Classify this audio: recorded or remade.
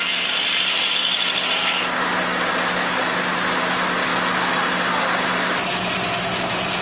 recorded